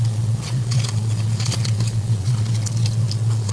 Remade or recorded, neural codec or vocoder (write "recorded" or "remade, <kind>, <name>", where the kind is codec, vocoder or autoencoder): remade, vocoder, Vocos